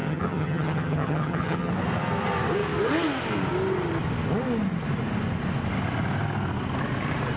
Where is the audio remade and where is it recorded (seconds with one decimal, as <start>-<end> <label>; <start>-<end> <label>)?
0.0-1.7 remade; 1.7-7.4 recorded